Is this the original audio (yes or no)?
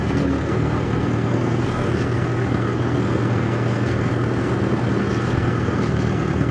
no